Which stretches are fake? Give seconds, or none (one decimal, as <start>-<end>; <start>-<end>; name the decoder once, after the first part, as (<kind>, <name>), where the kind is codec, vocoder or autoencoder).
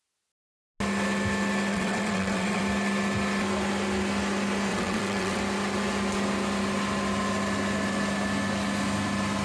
1.7-2.6 (vocoder, WaveNeXt); 4.7-5.4